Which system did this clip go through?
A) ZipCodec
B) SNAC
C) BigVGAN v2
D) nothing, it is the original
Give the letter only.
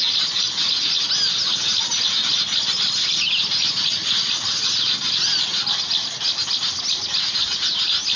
D